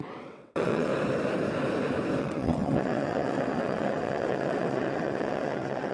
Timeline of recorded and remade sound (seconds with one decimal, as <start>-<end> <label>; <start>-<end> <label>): 0.0-0.9 remade; 0.9-2.2 recorded; 2.2-5.9 remade